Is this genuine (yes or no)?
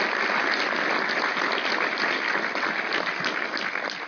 yes